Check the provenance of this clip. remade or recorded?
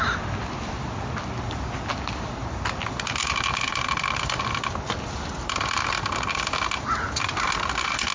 recorded